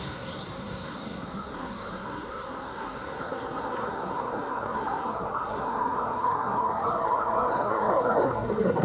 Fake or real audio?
fake